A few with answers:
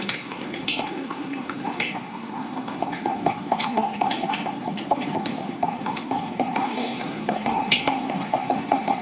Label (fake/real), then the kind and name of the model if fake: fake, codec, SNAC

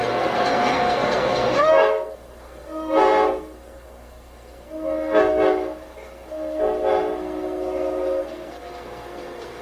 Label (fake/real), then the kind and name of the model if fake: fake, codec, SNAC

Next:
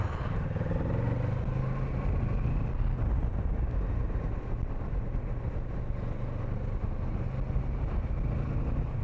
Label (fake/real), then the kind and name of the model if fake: real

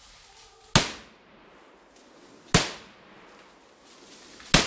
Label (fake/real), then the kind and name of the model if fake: real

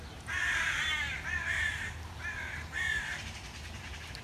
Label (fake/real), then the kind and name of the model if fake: real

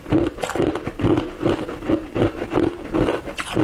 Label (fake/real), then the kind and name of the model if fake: real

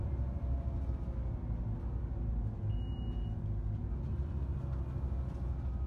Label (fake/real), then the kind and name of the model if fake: real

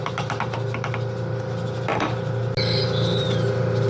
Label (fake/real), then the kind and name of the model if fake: real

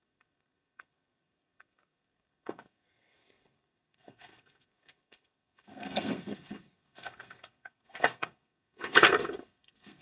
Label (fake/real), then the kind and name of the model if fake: fake, codec, SNAC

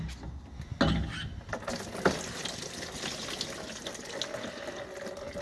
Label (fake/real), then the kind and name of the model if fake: real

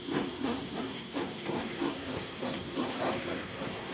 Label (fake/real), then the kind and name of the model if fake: fake, codec, SNAC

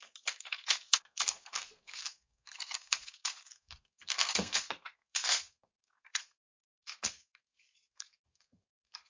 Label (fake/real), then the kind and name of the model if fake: fake, codec, SNAC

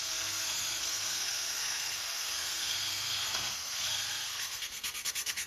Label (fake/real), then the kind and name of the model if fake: fake, codec, SNAC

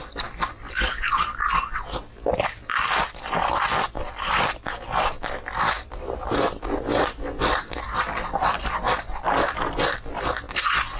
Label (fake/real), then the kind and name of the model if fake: real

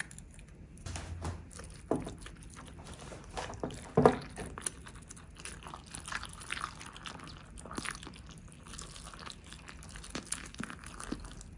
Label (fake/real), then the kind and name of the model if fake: real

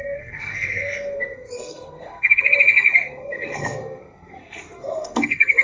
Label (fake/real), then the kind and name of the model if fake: fake, codec, SNAC